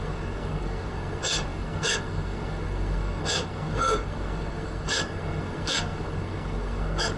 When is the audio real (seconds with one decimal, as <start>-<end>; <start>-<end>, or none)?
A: none